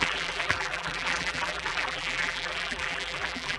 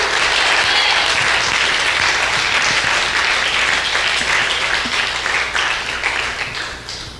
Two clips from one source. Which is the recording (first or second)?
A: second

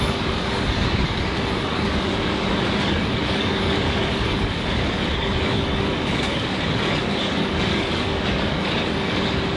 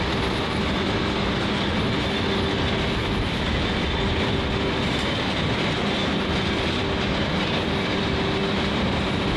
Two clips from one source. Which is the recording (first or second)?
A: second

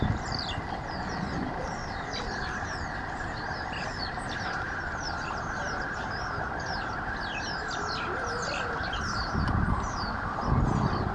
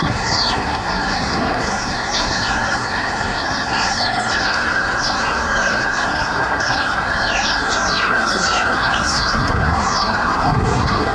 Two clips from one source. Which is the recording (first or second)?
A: first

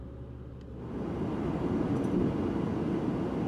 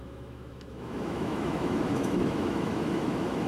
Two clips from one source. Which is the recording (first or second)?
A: first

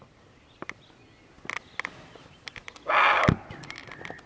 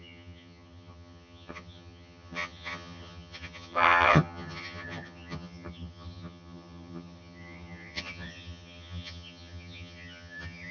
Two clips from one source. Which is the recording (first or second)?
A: first